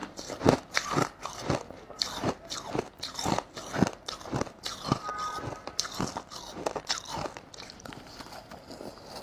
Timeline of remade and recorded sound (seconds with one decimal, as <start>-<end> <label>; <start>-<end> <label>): 0.0-9.2 remade